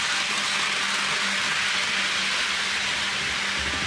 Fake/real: real